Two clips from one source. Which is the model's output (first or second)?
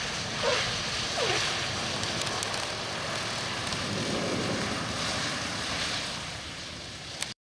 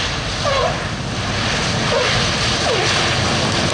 first